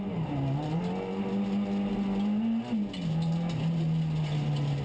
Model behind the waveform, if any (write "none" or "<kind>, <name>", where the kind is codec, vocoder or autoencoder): none